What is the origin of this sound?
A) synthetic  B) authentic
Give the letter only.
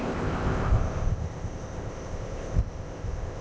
A